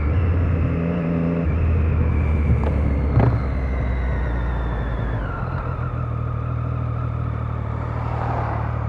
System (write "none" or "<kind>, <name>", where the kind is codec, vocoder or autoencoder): none